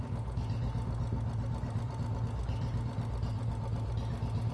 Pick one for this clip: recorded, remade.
recorded